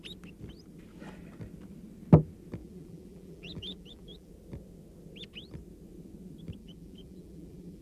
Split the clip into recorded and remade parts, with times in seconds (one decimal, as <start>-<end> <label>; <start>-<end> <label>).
0.0-2.6 recorded; 2.6-4.3 remade; 4.3-6.6 recorded; 6.6-7.8 remade